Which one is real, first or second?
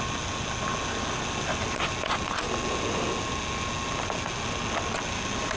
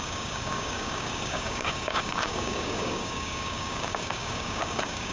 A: first